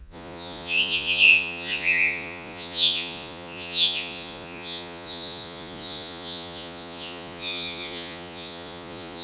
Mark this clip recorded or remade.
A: remade